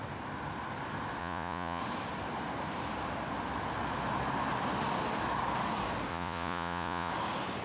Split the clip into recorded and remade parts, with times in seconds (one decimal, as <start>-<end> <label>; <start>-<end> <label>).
0.0-1.2 recorded; 1.2-1.8 remade; 1.8-6.1 recorded; 6.1-7.1 remade; 7.1-7.6 recorded